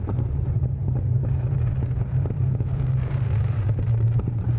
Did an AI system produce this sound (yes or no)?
yes